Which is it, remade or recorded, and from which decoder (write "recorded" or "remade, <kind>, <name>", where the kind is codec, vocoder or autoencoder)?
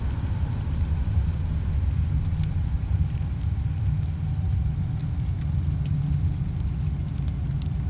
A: recorded